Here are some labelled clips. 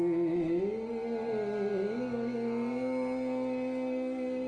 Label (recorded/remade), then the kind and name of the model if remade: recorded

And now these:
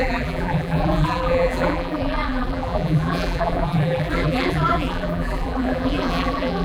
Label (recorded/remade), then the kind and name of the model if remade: remade, vocoder, BigVGAN v2